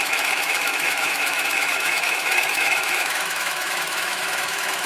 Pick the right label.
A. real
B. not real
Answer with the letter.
B